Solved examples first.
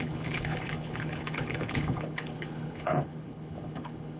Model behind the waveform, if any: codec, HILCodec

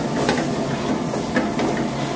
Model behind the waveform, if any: none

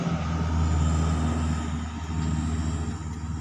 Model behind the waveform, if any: none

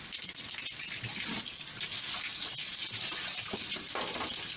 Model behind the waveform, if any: none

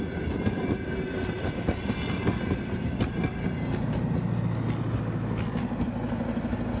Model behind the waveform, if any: none